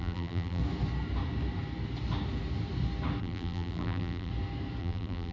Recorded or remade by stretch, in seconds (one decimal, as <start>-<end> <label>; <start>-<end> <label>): 0.0-0.6 remade; 0.6-3.2 recorded; 3.2-4.3 remade; 4.3-4.8 recorded; 4.8-5.3 remade